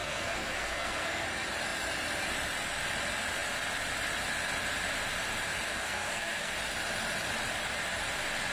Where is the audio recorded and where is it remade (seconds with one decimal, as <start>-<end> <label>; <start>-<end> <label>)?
0.0-1.2 remade; 1.2-5.7 recorded; 5.7-6.5 remade; 6.5-8.5 recorded